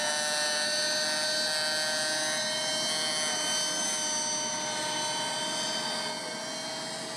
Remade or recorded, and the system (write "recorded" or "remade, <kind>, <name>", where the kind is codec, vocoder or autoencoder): recorded